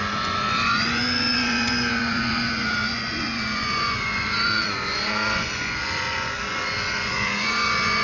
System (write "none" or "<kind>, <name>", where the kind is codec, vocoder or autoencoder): vocoder, Vocos